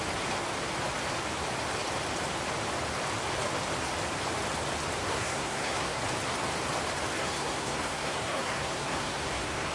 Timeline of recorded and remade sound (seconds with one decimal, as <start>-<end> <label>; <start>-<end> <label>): 0.0-5.0 recorded; 5.0-6.0 remade; 6.0-7.2 recorded; 7.2-9.7 remade